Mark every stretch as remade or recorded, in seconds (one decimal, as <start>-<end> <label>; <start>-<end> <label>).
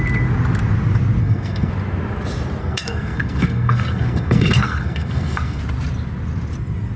0.0-1.2 recorded; 1.2-1.7 remade; 1.7-2.6 recorded; 2.6-5.6 remade; 5.6-7.0 recorded